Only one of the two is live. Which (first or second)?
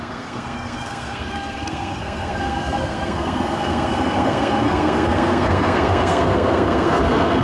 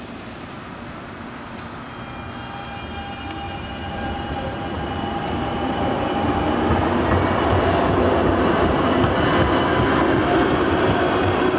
second